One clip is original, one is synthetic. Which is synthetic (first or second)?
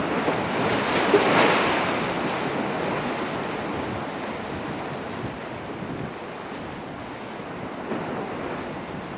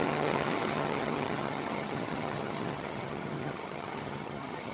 second